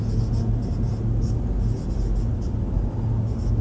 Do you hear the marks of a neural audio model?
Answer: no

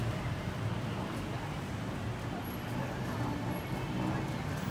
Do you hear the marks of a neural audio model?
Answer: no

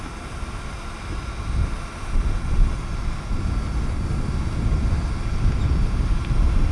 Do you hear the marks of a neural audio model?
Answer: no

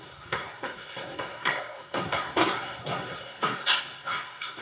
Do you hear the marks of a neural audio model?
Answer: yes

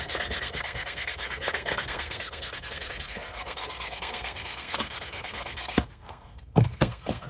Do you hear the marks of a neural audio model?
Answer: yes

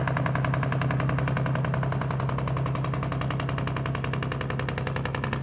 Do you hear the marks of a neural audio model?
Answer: no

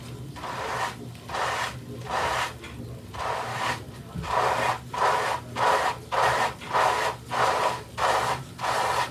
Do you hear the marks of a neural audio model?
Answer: no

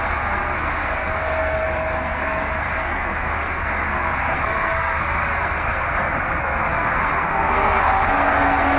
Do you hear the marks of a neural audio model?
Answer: yes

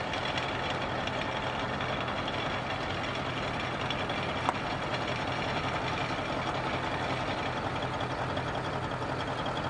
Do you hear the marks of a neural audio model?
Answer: no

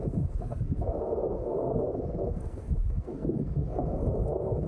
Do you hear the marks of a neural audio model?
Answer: yes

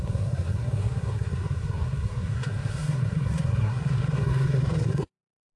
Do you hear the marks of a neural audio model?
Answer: yes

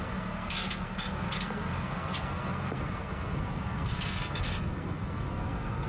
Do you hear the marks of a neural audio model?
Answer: yes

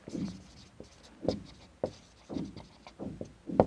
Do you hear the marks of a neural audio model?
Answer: no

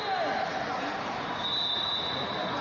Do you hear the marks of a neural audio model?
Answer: no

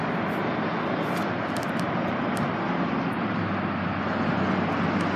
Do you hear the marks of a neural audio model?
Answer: no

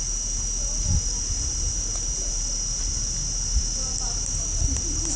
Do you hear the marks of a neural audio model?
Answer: no